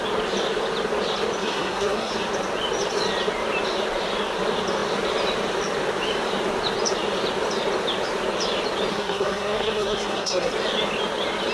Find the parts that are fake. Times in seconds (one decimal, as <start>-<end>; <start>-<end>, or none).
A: 1.4-2.1; 8.9-10.5